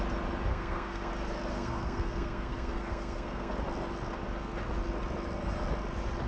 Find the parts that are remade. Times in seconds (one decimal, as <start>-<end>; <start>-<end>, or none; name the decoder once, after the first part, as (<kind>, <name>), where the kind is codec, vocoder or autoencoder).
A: 0.5-1.1 (codec, SNAC); 1.5-3.5